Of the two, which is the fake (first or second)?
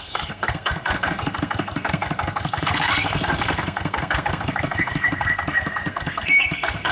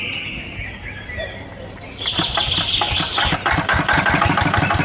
first